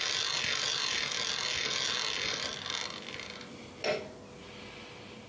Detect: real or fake real